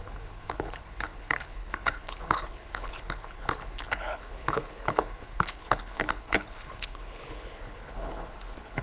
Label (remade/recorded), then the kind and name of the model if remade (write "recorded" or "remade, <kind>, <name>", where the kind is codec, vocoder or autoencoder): remade, codec, HILCodec